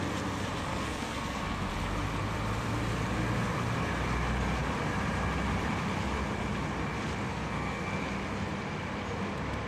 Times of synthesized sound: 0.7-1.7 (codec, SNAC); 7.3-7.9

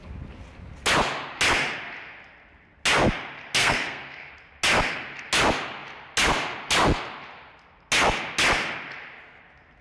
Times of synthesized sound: 3.6-4.3 (codec, SNAC)

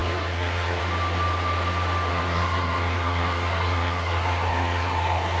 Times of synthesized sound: 0.0-0.8 (codec, SNAC); 2.1-5.4

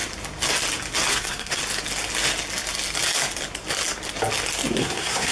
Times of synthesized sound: 1.1-1.6 (codec, SNAC); 4.8-5.3

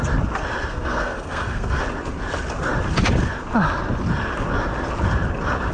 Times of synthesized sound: 0.7-1.8 (codec, SNAC)

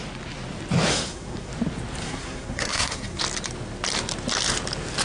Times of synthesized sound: 0.9-1.5 (codec, SNAC); 2.0-3.2